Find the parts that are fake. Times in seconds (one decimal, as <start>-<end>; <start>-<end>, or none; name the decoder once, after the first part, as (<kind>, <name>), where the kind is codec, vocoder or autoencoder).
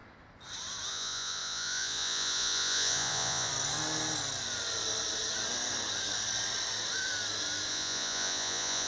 0.9-3.5 (vocoder, Vocos); 7.7-8.9